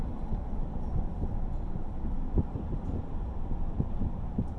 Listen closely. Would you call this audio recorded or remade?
remade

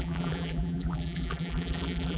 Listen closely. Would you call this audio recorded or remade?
remade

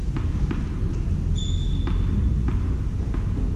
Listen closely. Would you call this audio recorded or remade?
recorded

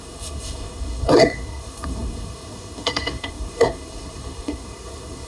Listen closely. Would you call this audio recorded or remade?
remade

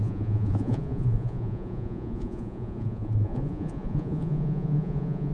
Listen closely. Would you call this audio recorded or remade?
remade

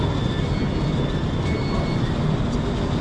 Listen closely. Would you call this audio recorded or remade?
recorded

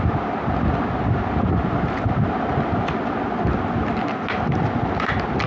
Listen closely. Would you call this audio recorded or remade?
recorded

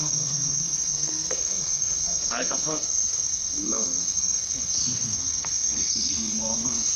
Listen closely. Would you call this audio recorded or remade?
remade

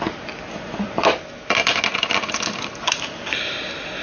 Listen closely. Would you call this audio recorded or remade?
recorded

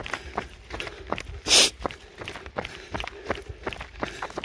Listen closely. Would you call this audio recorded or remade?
recorded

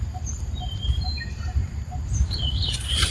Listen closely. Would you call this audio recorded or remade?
remade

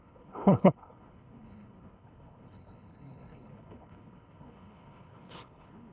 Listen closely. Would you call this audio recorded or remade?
remade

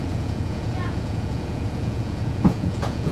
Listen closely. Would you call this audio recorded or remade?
remade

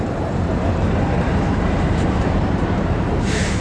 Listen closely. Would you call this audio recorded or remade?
remade